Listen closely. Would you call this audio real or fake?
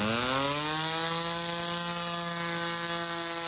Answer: real